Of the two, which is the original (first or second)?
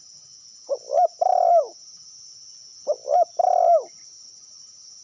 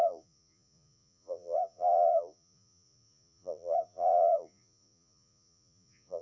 first